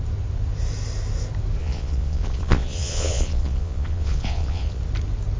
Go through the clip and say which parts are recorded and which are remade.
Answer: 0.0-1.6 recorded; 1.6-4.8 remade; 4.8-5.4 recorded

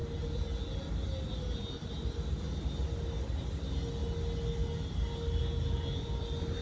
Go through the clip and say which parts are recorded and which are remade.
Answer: 0.0-6.6 recorded

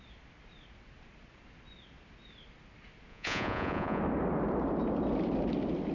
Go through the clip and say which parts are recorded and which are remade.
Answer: 0.0-3.1 recorded; 3.1-4.0 remade; 4.0-5.9 recorded

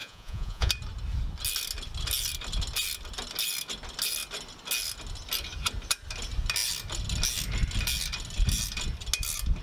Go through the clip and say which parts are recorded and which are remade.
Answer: 0.0-0.7 remade; 0.7-9.6 recorded

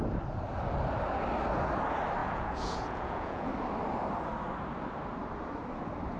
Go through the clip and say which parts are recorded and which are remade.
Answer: 0.0-2.2 recorded; 2.2-3.5 remade; 3.5-6.2 recorded

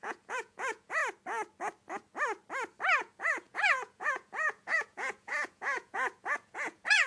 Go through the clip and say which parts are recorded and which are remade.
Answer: 0.0-1.0 remade; 1.0-3.0 recorded; 3.0-7.1 remade

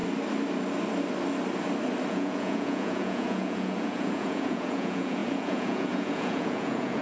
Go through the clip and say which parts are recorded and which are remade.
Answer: 0.0-2.1 recorded; 2.1-7.0 remade

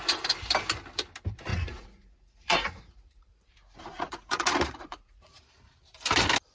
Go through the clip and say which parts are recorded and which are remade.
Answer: 0.0-1.5 recorded; 1.5-5.4 remade; 5.4-6.5 recorded